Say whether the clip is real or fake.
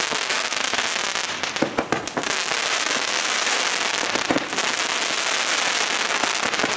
real